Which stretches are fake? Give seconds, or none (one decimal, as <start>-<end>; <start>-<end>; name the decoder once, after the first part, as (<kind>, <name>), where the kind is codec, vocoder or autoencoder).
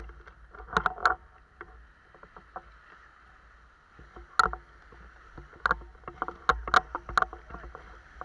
none